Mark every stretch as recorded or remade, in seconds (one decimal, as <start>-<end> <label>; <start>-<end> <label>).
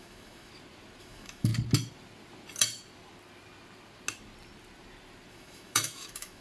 0.0-0.5 remade; 0.5-1.0 recorded; 1.0-1.5 remade; 1.5-5.3 recorded; 5.3-6.4 remade